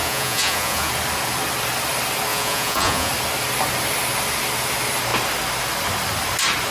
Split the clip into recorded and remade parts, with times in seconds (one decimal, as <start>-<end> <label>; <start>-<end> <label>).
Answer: 0.0-0.9 remade; 0.9-2.3 recorded; 2.3-3.1 remade; 3.1-6.7 recorded